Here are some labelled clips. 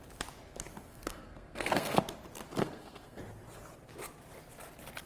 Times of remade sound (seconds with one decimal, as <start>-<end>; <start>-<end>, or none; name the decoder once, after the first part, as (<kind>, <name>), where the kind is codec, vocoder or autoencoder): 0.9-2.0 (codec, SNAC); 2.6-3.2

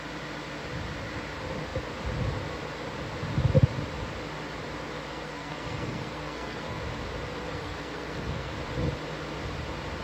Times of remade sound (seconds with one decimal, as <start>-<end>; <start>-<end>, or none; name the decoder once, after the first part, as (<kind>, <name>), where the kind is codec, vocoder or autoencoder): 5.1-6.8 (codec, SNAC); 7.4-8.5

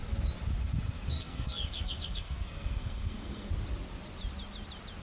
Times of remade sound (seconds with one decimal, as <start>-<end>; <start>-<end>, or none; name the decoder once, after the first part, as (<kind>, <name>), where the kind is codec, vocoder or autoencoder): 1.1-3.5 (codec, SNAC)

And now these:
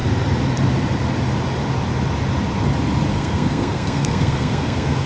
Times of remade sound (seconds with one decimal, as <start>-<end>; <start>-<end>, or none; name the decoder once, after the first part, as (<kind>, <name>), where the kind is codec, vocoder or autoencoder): 3.1-5.1 (codec, SNAC)

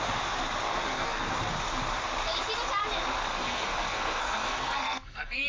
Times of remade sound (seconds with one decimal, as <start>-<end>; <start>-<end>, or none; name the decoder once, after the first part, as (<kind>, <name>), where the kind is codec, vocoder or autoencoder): 0.7-1.3 (codec, SNAC); 3.3-5.5